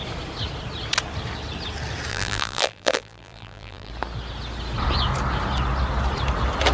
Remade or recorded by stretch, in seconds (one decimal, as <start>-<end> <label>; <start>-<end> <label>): 0.0-2.1 recorded; 2.1-3.9 remade; 3.9-6.7 recorded